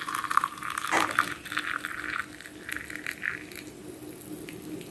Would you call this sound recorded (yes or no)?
yes